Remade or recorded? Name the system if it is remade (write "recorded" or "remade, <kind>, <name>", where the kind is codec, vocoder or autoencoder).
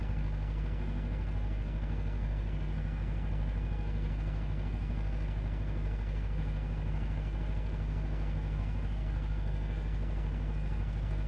remade, codec, SNAC